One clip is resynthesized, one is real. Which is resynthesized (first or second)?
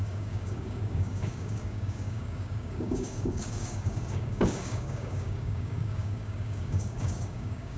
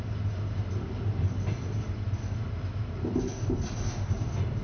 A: first